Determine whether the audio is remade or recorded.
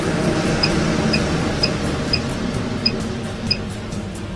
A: recorded